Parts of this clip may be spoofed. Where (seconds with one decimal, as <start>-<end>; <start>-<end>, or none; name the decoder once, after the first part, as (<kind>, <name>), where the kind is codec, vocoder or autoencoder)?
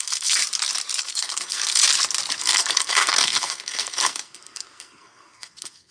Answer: 0.0-0.4 (codec, SNAC); 1.0-1.8; 2.4-5.9